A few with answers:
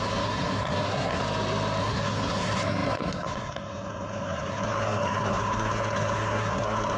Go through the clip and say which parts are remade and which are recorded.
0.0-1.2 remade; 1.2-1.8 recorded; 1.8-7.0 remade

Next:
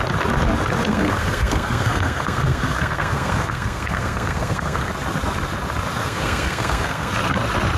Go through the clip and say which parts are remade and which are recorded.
0.0-0.9 recorded; 0.9-4.9 remade; 4.9-6.0 recorded; 6.0-7.1 remade; 7.1-7.8 recorded